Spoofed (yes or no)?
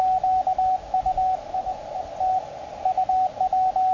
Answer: no